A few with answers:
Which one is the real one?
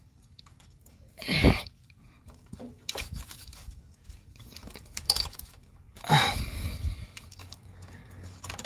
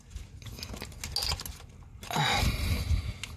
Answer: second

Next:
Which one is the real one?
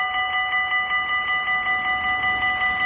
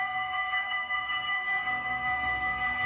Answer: first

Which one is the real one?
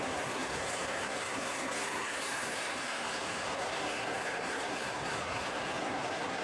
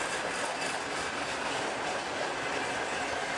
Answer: second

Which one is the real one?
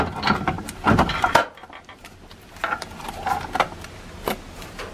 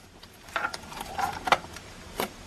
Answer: first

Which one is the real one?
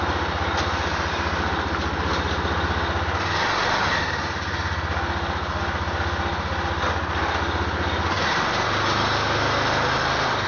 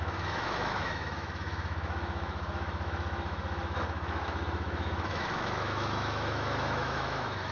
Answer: first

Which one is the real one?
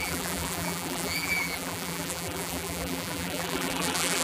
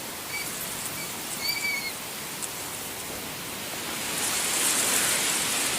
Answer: second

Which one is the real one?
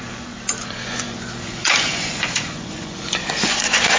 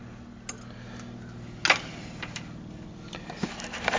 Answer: second